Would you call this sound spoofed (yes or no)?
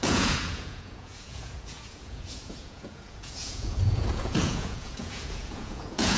yes